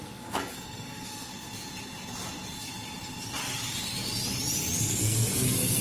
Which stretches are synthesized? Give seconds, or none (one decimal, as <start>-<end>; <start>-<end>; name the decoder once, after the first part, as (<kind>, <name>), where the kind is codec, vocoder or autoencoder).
0.0-1.3 (codec, SNAC); 4.8-5.8